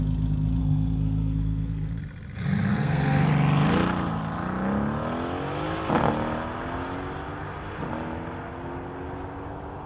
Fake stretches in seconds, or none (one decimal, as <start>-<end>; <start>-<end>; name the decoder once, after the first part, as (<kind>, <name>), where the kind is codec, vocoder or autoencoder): 0.6-2.0 (codec, SNAC); 2.7-3.3